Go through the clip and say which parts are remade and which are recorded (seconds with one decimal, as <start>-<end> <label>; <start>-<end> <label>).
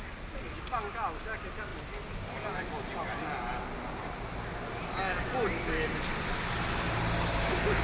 0.0-7.8 recorded